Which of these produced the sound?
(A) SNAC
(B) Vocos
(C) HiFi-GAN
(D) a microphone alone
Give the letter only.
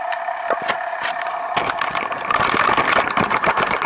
D